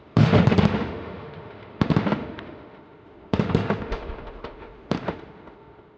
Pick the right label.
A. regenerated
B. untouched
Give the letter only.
A